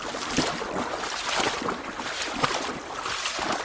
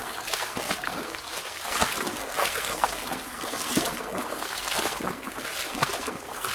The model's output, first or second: second